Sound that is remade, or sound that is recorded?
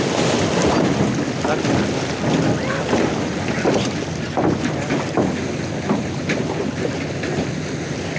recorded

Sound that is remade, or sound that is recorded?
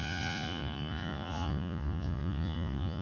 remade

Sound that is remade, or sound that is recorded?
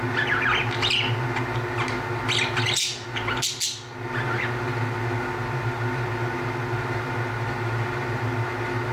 recorded